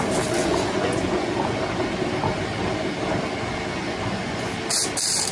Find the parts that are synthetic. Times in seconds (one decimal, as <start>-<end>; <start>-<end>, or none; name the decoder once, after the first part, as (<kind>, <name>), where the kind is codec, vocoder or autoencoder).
0.4-1.6 (vocoder, Vocos); 3.7-4.5